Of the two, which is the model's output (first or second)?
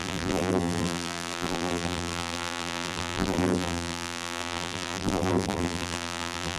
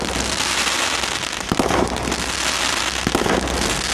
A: first